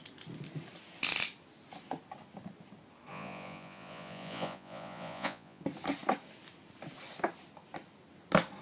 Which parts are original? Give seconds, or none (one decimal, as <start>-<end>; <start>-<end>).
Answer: 0.0-3.1; 5.6-8.6